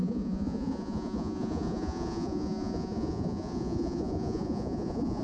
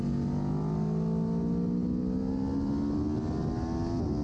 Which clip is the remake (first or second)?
first